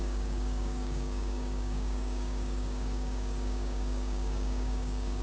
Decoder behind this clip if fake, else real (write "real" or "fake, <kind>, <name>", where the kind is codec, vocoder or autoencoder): fake, codec, DAC